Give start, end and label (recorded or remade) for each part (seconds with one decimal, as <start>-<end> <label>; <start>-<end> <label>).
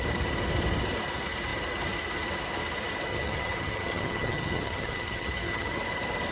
0.0-3.1 recorded; 3.1-5.7 remade; 5.7-6.3 recorded